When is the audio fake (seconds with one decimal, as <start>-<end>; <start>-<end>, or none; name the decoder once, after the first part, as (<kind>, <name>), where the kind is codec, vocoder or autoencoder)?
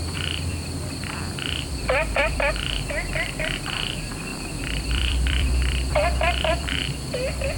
0.0-7.6 (vocoder, BigVGAN v2)